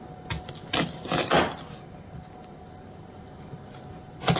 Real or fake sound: real